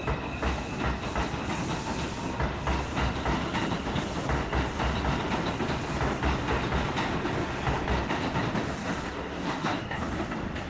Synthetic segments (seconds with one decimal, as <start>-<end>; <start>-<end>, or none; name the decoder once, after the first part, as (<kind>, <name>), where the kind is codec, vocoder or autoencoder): 8.8-10.1 (codec, SNAC)